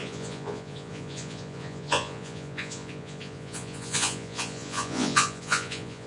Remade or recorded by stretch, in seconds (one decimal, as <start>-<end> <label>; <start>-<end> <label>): 0.0-6.1 remade